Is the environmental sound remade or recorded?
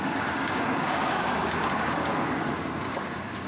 remade